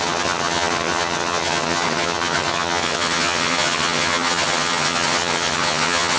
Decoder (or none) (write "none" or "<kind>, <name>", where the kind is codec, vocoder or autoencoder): vocoder, HiFi-GAN